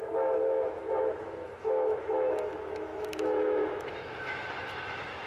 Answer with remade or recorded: remade